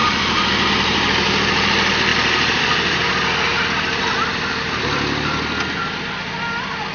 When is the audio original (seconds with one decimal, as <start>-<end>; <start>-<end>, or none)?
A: none